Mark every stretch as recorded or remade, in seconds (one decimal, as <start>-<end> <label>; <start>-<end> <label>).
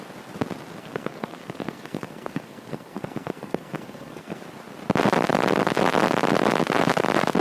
0.0-0.8 recorded; 0.8-4.4 remade; 4.4-7.4 recorded